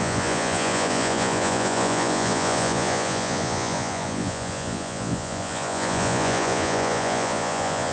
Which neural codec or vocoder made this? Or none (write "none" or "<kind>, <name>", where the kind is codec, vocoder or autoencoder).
vocoder, Vocos